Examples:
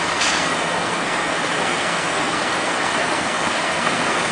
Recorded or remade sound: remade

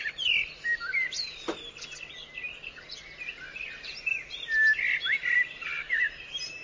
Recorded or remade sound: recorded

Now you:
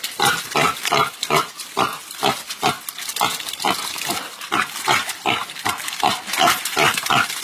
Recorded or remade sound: recorded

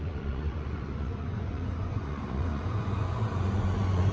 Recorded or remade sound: remade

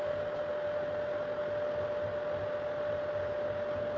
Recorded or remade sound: recorded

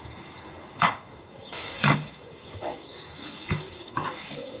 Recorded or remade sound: remade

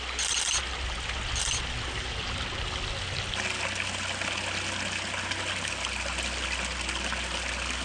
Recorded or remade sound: recorded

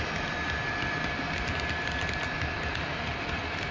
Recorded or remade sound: recorded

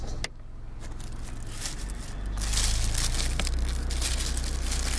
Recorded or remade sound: recorded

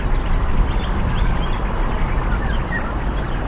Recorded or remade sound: recorded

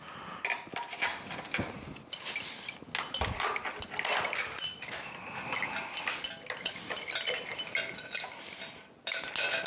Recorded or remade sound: recorded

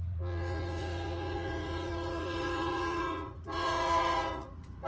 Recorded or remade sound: remade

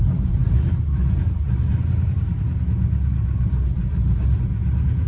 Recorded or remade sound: recorded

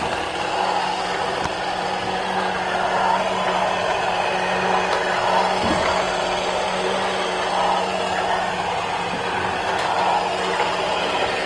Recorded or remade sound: recorded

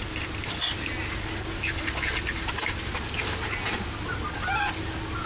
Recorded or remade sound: recorded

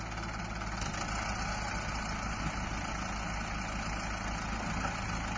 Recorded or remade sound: recorded